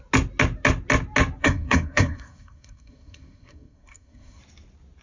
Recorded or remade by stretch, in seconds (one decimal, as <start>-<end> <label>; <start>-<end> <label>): 0.0-1.4 recorded; 1.4-4.4 remade; 4.4-5.0 recorded